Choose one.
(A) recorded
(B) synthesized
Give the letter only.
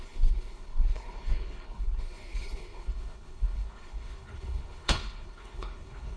B